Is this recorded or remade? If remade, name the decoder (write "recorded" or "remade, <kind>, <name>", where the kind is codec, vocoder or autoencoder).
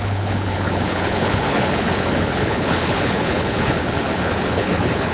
remade, codec, HILCodec